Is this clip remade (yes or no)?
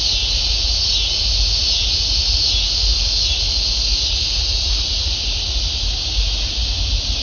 no